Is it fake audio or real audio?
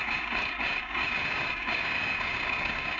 fake